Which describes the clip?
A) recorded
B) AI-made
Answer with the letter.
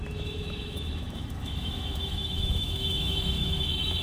B